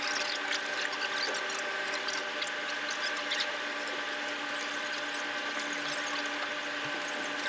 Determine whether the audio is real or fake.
real